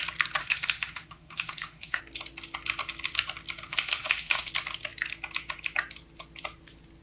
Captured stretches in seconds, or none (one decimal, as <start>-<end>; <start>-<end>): 0.0-0.4; 2.0-3.7; 4.5-7.0